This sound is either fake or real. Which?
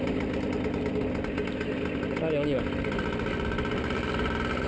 real